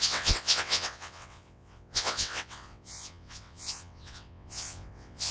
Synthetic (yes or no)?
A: yes